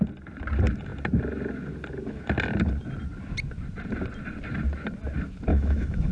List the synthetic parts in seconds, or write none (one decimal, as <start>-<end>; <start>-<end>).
5.5-6.1